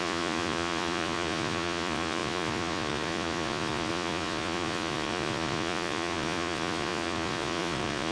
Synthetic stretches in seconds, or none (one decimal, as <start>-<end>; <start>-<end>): 0.0-8.1